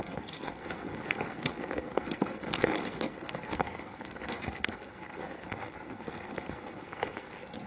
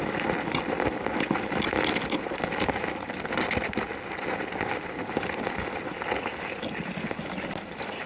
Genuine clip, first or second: second